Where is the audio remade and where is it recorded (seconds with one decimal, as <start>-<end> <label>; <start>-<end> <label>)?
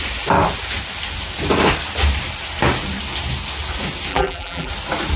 0.0-4.1 recorded; 4.1-4.7 remade; 4.7-5.2 recorded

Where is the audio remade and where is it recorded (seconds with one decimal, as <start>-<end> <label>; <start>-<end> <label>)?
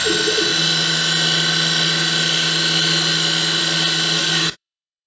0.0-4.2 recorded; 4.2-5.1 remade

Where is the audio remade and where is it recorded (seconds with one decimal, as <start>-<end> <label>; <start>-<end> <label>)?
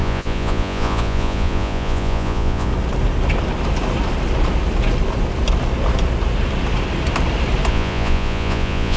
0.0-2.7 remade; 2.7-7.7 recorded; 7.7-9.0 remade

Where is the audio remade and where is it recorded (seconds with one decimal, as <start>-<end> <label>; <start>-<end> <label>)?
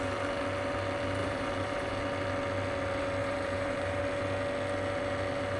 0.0-1.2 recorded; 1.2-1.9 remade; 1.9-3.2 recorded; 3.2-4.0 remade; 4.0-5.6 recorded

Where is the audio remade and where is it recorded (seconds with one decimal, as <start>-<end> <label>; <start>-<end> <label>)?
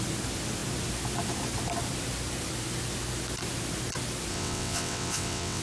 0.0-4.3 recorded; 4.3-5.6 remade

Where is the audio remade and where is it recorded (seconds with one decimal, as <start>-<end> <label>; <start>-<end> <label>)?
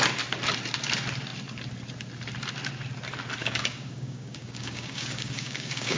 0.0-3.4 recorded; 3.4-6.0 remade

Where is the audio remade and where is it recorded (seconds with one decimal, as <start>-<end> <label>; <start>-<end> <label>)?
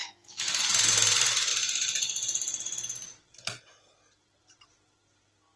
0.0-0.6 remade; 0.6-5.6 recorded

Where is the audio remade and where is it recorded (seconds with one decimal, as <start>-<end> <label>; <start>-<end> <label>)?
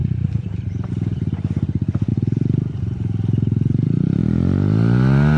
0.0-0.9 remade; 0.9-2.1 recorded; 2.1-4.2 remade; 4.2-5.4 recorded